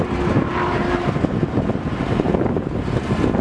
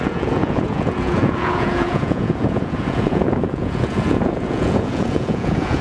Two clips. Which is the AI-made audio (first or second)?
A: second